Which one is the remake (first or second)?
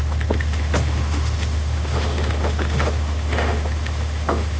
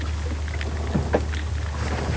first